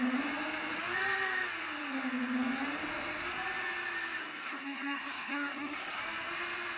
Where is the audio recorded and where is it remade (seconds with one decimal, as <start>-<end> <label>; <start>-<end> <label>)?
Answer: 0.0-4.2 recorded; 4.2-6.0 remade; 6.0-6.8 recorded